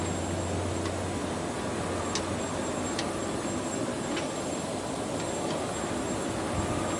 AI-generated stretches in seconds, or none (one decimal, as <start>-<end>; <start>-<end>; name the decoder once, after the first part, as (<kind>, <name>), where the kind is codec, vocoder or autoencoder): none